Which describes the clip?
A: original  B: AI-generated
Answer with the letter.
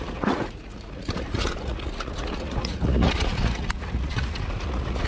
B